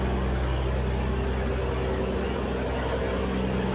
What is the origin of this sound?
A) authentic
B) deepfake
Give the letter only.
A